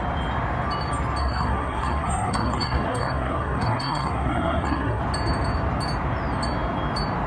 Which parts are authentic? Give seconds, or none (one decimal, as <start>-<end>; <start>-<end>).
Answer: 0.0-1.2; 5.0-7.3